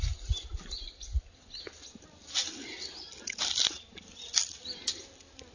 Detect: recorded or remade recorded